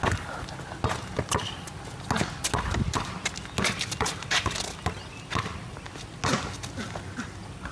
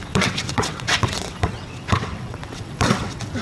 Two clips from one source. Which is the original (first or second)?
first